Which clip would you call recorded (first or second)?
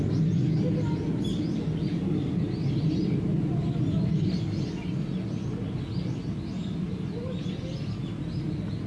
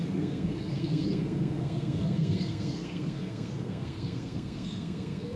first